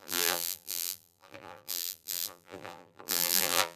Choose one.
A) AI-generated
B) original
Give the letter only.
A